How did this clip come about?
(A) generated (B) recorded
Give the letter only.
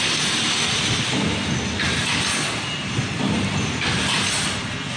B